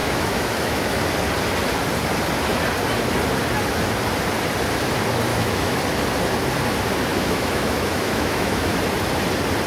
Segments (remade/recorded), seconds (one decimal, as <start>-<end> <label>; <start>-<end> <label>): 0.0-1.0 remade; 1.0-5.3 recorded; 5.3-5.8 remade; 5.8-7.1 recorded; 7.1-8.8 remade; 8.8-9.7 recorded

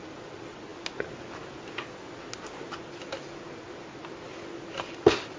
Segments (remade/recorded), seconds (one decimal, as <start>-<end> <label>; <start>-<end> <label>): 0.0-5.4 recorded